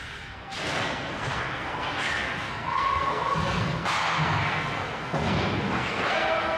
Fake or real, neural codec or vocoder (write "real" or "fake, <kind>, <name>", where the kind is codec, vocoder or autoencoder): fake, codec, SNAC